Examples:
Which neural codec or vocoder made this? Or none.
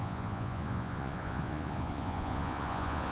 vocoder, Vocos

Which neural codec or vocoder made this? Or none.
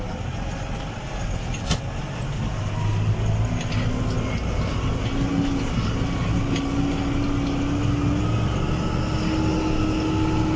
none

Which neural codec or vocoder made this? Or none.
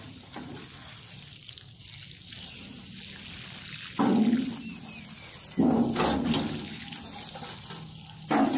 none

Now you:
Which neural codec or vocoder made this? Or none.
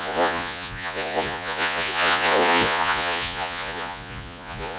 vocoder, Vocos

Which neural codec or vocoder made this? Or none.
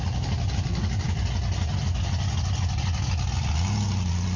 none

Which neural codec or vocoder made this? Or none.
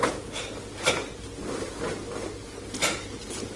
none